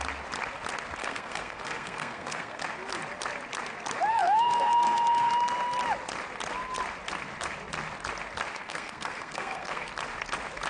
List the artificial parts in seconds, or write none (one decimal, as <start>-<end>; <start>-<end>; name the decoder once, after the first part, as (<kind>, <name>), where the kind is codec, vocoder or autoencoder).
1.0-2.6 (codec, SNAC); 4.1-5.3; 8.6-9.9